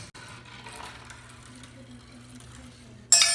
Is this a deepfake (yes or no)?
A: no